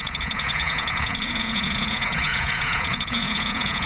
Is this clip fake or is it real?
fake